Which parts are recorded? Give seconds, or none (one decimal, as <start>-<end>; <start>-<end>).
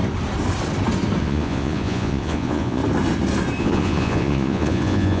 0.0-1.2; 2.8-3.6